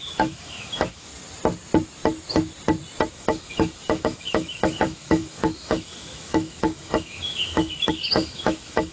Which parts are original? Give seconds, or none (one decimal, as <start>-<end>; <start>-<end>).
1.1-3.1